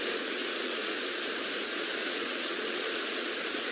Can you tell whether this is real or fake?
fake